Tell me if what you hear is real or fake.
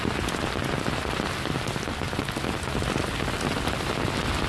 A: real